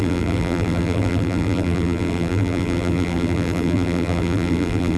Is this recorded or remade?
remade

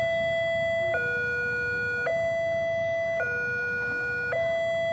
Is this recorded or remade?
recorded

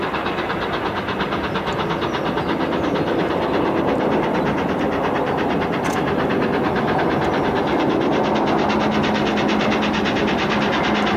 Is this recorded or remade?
recorded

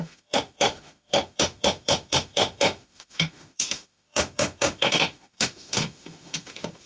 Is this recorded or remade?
remade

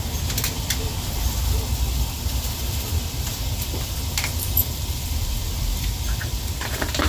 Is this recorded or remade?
remade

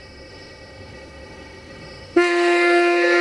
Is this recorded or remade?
remade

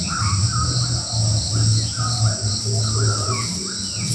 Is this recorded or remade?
recorded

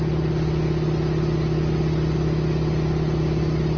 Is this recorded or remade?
recorded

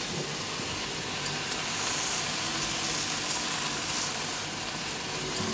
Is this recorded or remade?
recorded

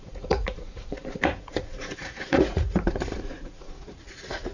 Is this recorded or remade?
remade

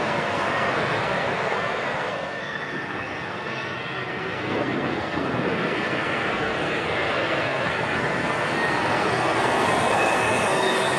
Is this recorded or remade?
remade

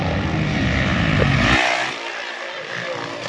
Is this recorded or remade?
recorded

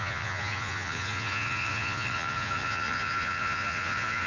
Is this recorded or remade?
remade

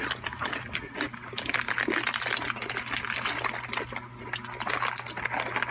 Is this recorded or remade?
recorded